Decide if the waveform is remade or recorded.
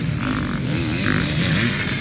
recorded